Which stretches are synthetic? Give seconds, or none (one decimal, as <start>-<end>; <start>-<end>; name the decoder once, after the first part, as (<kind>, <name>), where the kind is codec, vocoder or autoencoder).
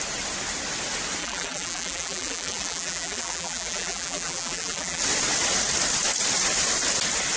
1.2-5.0 (vocoder, BigVGAN v2)